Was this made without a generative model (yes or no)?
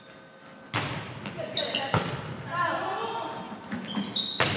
yes